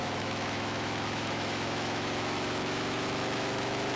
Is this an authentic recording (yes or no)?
no